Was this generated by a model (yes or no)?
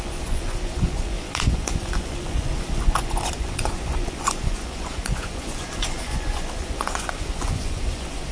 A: yes